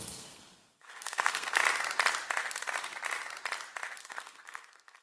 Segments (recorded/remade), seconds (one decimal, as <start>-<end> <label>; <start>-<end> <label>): 0.0-1.6 remade; 1.6-4.0 recorded; 4.0-5.0 remade